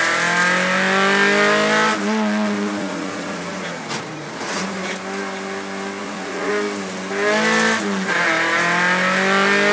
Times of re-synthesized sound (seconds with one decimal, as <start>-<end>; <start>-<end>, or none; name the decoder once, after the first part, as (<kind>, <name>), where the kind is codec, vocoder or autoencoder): 2.8-4.9 (vocoder, Vocos); 6.0-6.5